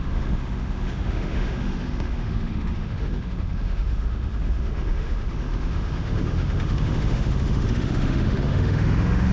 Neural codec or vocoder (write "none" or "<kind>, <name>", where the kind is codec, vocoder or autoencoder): autoencoder, DAC-VAE